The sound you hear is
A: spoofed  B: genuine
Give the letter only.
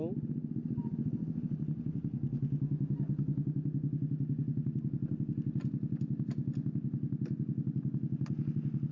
B